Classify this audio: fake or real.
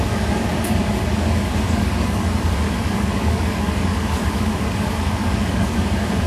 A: fake